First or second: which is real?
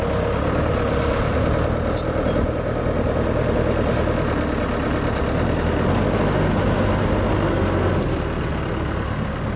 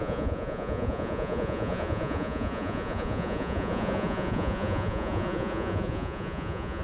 first